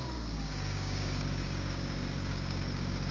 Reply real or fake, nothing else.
fake